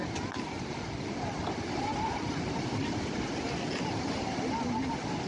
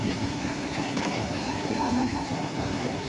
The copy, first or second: second